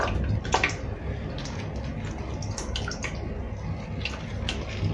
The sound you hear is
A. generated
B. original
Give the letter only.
B